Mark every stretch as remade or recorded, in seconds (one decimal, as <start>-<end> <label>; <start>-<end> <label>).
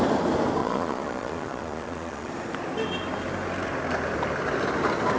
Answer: 0.0-0.6 recorded; 0.6-2.3 remade; 2.3-5.2 recorded